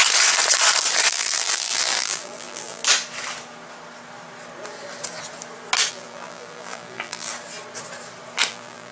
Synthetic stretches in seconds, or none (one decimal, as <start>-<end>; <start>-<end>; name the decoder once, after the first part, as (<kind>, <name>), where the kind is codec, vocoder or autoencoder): 1.1-2.8 (vocoder, BigVGAN v2); 5.9-7.3; 8.5-8.9